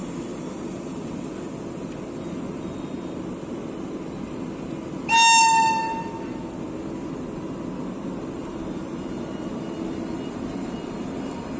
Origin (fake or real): real